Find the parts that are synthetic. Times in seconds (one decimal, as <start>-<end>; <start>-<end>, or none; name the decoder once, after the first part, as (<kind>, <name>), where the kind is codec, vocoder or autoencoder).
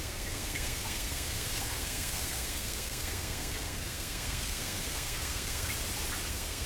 0.0-5.7 (codec, SNAC); 6.3-6.7